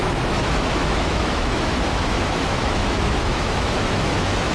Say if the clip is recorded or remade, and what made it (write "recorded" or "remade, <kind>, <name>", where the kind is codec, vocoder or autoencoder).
remade, autoencoder, DAC-VAE